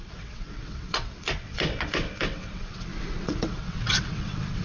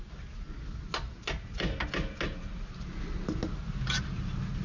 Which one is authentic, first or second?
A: second